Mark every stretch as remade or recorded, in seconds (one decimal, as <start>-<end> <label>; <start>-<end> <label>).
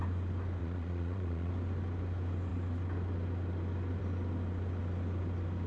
0.0-0.6 recorded; 0.6-1.5 remade; 1.5-5.7 recorded